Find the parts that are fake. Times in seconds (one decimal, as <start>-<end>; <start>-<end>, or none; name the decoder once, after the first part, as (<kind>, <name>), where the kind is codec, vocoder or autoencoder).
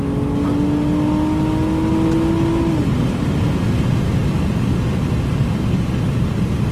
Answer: none